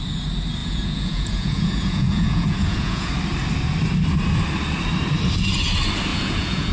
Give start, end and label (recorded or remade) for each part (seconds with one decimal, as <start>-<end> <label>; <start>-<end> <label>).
0.0-0.6 recorded; 0.6-3.1 remade; 3.1-6.1 recorded; 6.1-6.7 remade